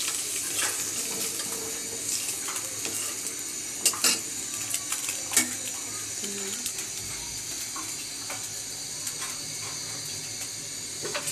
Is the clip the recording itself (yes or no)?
yes